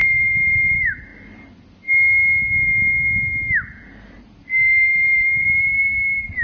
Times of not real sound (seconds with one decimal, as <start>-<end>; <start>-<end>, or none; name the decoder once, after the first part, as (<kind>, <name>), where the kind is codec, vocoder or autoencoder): 0.0-1.1 (vocoder, BigVGAN v2); 4.9-6.4